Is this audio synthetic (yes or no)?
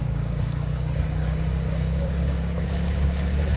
yes